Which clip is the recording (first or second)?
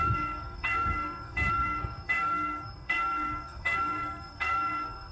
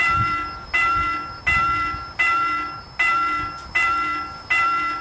second